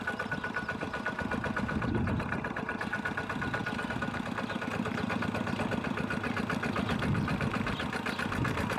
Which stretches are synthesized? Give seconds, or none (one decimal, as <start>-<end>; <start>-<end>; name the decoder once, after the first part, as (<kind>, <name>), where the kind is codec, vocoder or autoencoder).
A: none